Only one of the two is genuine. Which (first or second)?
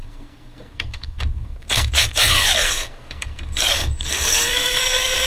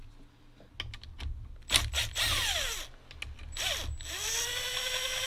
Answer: second